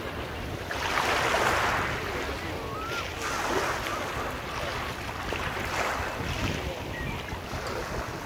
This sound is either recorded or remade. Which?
recorded